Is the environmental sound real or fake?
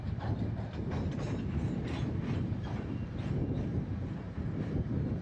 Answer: real